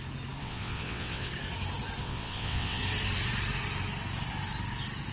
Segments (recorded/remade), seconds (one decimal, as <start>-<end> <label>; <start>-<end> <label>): 0.0-0.4 recorded; 0.4-1.3 remade; 1.3-2.0 recorded; 2.0-2.8 remade; 2.8-5.1 recorded